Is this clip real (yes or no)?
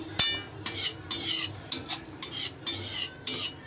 yes